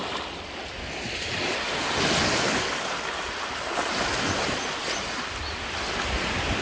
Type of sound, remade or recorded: recorded